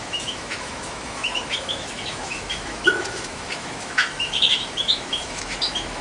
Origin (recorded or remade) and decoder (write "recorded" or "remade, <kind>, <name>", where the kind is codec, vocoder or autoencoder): remade, autoencoder, DAC-VAE